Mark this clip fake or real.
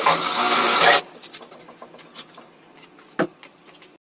real